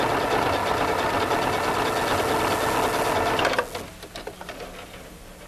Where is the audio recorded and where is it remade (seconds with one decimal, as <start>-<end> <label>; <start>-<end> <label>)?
0.0-5.5 recorded